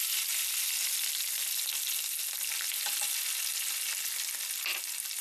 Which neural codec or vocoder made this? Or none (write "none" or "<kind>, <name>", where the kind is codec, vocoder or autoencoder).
none